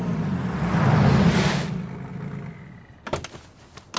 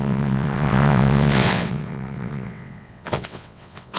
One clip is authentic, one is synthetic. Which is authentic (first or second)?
first